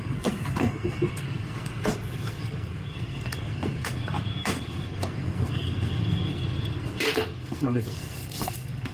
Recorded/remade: remade